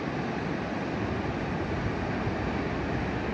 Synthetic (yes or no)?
no